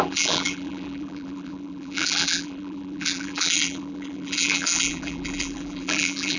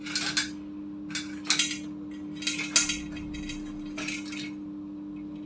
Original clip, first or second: second